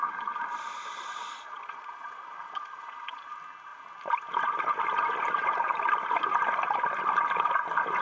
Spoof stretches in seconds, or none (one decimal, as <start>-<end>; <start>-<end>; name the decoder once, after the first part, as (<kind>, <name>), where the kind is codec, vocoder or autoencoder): 0.9-3.2 (vocoder, Vocos)

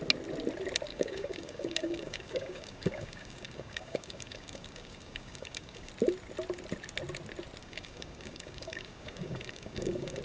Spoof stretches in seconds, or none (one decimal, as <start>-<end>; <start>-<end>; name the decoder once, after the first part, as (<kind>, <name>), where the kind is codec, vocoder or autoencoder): 0.9-5.9 (codec, DAC); 7.6-10.2